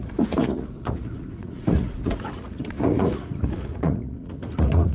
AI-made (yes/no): yes